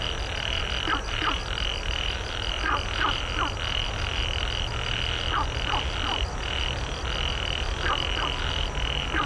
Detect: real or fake real